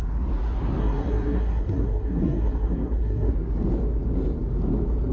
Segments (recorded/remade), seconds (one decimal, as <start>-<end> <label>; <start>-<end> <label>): 0.0-0.8 recorded; 0.8-3.3 remade; 3.3-5.1 recorded